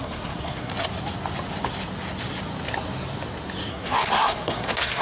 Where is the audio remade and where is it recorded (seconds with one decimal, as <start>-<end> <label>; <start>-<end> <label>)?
0.0-0.7 remade; 0.7-3.7 recorded; 3.7-5.0 remade